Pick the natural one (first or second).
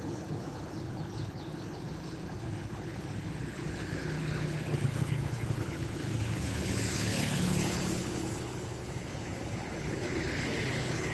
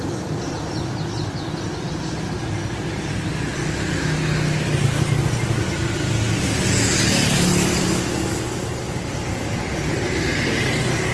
second